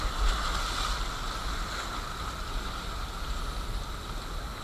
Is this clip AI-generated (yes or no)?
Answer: no